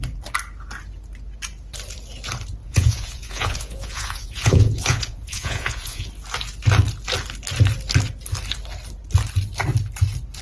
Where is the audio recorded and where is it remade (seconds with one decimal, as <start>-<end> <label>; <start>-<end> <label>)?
0.0-2.6 recorded; 2.6-6.1 remade; 6.1-10.4 recorded